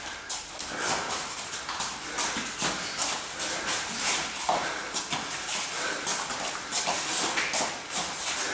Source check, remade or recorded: recorded